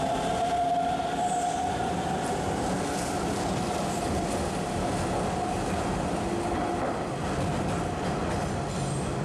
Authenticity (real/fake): real